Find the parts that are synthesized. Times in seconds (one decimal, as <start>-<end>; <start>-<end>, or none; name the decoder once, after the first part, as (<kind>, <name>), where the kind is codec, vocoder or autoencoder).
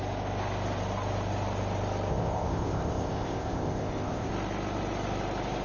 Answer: 2.1-4.3 (codec, ZipCodec)